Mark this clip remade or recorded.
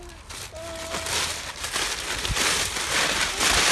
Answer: recorded